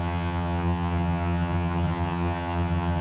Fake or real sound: fake